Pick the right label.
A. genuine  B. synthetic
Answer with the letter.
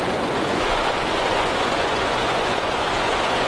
B